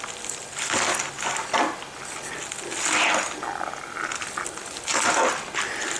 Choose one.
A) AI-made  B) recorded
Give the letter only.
B